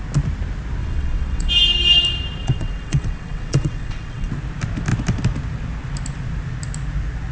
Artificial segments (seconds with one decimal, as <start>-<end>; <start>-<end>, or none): 0.8-1.5; 2.4-4.3

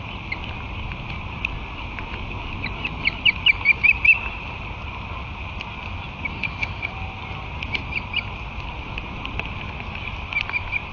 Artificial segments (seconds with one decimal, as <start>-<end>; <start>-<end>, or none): 6.3-6.9

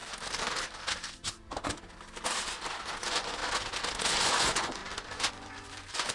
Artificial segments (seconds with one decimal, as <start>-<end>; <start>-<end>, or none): 3.0-3.4; 4.0-4.8; 5.3-6.1

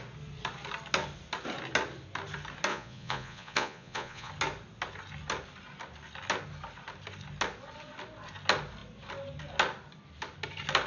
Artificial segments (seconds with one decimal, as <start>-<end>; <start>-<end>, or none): 2.7-4.3

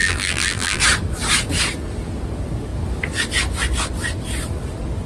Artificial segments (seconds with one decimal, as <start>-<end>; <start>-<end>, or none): 0.0-0.8

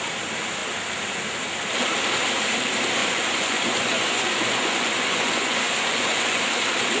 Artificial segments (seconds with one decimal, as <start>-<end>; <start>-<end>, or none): 3.0-6.4

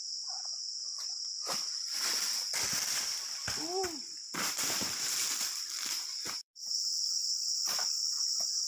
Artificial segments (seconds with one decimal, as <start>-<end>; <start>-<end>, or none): 0.0-8.7

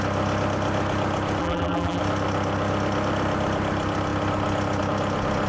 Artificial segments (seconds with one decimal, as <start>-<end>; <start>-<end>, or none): 1.4-2.0